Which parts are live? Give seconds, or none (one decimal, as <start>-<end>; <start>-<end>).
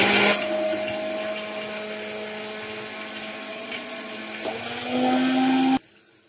0.0-3.5; 4.2-6.3